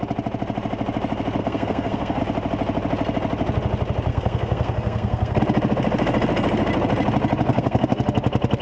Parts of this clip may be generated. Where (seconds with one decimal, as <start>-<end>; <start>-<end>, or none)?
1.4-2.2; 4.1-5.4; 7.5-8.0